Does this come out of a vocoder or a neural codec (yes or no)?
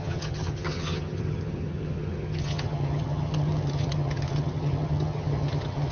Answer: yes